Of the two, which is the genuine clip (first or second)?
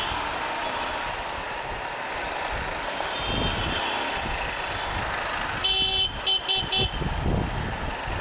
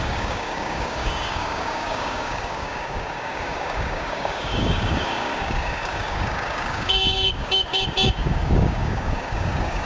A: first